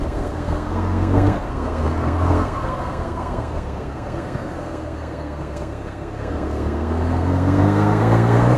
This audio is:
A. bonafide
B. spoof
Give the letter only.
B